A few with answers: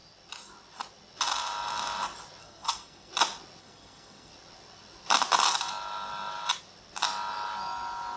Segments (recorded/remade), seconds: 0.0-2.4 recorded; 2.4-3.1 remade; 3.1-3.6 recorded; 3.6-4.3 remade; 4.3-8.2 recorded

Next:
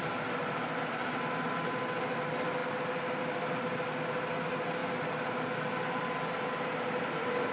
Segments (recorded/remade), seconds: 0.0-7.5 recorded

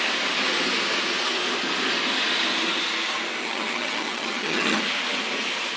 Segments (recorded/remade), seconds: 0.0-3.4 recorded; 3.4-4.8 remade; 4.8-5.8 recorded

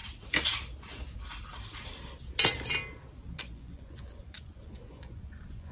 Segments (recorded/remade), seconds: 0.0-3.4 recorded; 3.4-5.7 remade

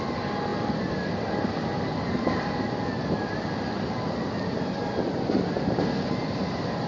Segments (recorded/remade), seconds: 0.0-6.9 recorded

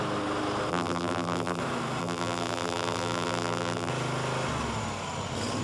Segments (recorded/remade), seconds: 0.0-0.7 recorded; 0.7-1.6 remade; 1.6-2.0 recorded; 2.0-3.9 remade; 3.9-5.6 recorded

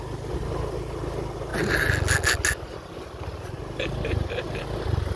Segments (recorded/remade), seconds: 0.0-5.2 recorded

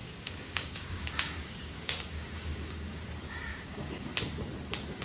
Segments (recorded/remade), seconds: 0.0-3.0 remade; 3.0-3.5 recorded; 3.5-4.1 remade; 4.1-5.0 recorded